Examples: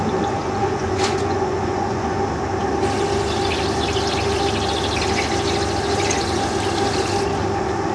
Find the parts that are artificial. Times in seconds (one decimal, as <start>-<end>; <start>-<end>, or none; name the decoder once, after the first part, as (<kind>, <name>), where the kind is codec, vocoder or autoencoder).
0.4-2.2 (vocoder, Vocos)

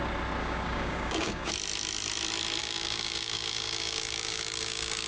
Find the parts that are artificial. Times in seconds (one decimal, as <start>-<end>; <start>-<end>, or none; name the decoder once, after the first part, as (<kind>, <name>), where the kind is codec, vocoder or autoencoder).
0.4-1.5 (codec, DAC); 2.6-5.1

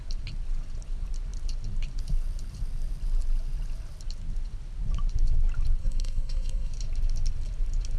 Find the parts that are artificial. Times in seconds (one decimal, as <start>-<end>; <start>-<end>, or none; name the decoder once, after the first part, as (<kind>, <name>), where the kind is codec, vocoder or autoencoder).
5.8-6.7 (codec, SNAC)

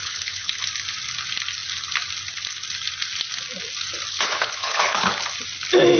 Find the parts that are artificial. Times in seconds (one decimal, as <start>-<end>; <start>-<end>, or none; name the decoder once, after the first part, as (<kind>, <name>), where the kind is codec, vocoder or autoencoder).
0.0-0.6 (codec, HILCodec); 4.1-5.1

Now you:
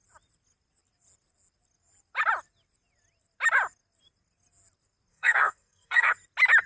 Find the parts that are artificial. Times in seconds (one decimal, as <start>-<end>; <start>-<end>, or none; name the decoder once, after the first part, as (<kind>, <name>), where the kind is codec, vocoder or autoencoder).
5.1-6.1 (codec, SNAC)

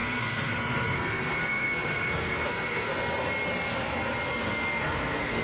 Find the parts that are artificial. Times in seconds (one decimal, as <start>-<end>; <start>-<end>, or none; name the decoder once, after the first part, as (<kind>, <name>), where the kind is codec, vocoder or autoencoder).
0.0-2.9 (codec, SNAC); 4.4-5.4

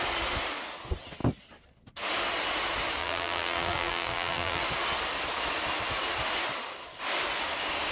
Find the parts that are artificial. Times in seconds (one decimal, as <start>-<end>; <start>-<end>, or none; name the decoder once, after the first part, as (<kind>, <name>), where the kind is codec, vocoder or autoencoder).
3.0-4.6 (vocoder, BigVGAN v2)

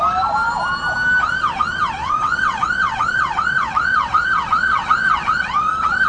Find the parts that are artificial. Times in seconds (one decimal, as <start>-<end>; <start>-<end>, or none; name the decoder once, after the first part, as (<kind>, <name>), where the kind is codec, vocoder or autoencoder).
2.0-6.1 (vocoder, WaveNeXt)